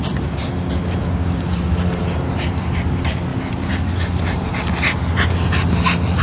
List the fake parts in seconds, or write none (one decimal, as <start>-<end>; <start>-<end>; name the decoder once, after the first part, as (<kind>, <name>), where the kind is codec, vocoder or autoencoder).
1.0-2.0 (codec, DAC)